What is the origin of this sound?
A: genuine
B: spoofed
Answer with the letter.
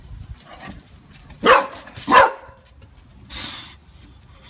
A